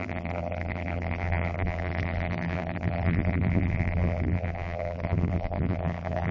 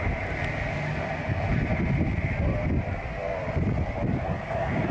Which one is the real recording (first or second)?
second